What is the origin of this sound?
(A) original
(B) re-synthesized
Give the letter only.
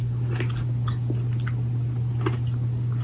A